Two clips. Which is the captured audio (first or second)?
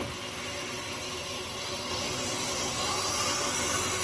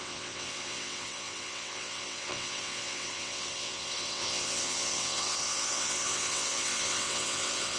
first